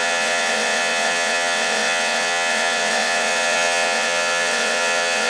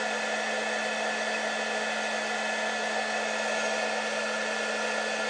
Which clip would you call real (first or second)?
second